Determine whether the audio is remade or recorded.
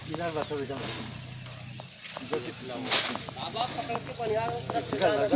recorded